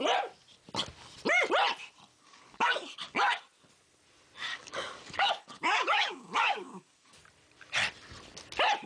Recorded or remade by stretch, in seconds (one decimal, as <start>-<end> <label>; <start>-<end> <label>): 0.0-2.1 recorded; 2.1-3.4 remade; 3.4-4.5 recorded; 4.5-7.2 remade; 7.2-8.9 recorded